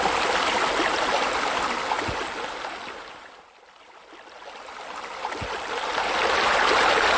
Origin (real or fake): real